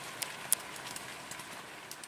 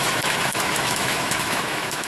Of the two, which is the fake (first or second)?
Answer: second